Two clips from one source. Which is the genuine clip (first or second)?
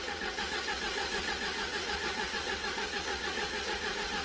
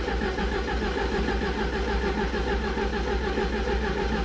second